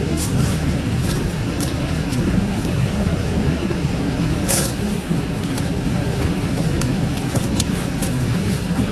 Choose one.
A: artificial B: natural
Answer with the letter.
A